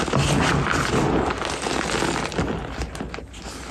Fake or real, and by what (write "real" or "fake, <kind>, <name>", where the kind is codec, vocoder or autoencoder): real